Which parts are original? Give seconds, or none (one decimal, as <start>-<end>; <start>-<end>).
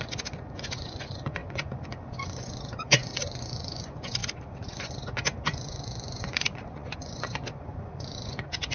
4.2-4.7